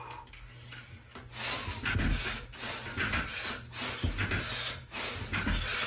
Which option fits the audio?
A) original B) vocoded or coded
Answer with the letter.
A